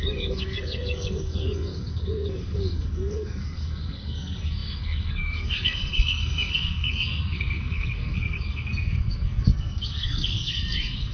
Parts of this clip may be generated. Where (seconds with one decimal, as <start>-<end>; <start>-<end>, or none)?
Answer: 0.0-11.1

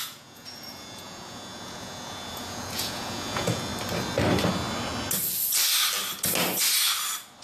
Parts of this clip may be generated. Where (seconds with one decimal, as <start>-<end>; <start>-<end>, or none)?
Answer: 0.0-3.7

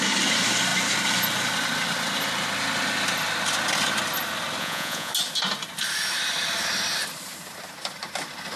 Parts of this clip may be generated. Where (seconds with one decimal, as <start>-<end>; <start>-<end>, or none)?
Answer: 4.6-5.1

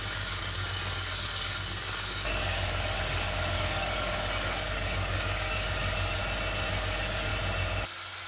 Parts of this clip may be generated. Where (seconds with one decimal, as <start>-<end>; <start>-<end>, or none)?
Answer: 0.0-6.2; 6.7-7.3

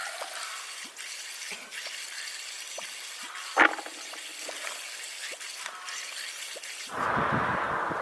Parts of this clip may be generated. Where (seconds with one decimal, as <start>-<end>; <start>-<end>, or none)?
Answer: none

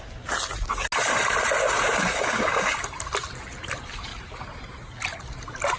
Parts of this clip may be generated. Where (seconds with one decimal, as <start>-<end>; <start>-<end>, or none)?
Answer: 1.6-2.8

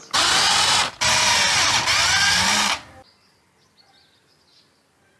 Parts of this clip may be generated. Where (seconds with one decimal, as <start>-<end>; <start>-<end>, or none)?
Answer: none